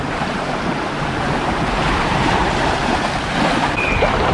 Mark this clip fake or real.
fake